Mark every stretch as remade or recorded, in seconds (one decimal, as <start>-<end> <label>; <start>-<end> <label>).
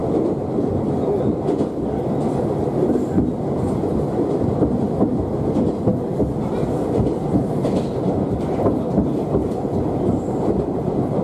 0.0-11.2 recorded